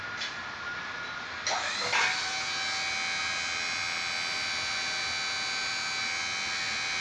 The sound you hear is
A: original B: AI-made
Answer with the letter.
A